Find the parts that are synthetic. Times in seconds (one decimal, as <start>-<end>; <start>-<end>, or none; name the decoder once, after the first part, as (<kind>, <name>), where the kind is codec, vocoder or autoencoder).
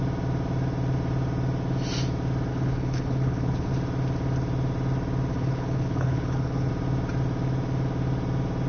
2.5-3.7 (codec, HILCodec); 5.3-6.7